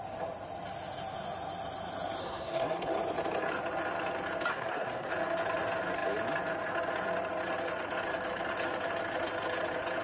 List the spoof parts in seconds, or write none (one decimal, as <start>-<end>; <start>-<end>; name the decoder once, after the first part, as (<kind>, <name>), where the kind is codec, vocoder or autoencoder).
2.2-2.9 (codec, SNAC); 4.5-5.1